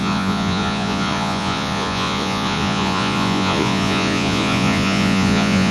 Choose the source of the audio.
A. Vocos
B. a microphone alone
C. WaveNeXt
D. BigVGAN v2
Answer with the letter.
A